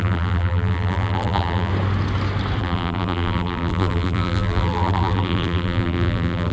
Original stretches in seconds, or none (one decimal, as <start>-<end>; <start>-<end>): 1.7-2.6